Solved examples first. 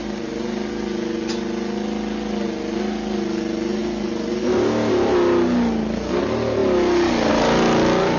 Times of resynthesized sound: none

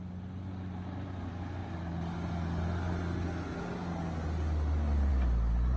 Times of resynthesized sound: none

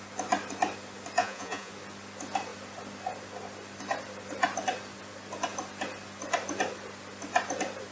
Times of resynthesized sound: 1.2-1.7 (vocoder, Vocos)

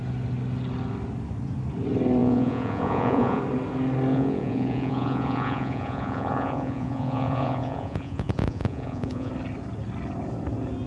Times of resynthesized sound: 2.2-3.4 (vocoder, Vocos); 4.1-9.3

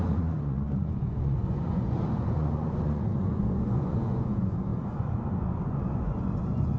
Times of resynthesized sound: 0.0-6.8 (vocoder, Vocos)

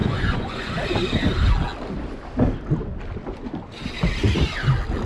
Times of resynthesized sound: 0.0-0.7 (vocoder, Vocos)

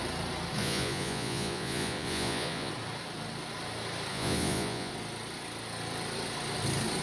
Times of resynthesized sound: 0.6-2.7 (vocoder, Vocos); 4.1-4.9